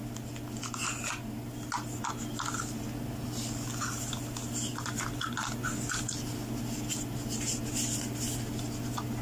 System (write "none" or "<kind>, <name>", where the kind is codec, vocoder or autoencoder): none